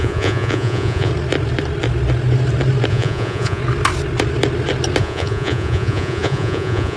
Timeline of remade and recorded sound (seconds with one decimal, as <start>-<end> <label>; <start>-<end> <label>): 0.0-1.1 remade; 1.1-2.9 recorded; 2.9-3.6 remade; 3.6-5.0 recorded; 5.0-7.0 remade